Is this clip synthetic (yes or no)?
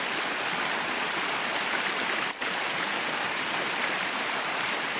yes